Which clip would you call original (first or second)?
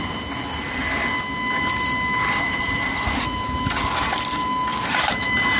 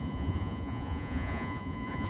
first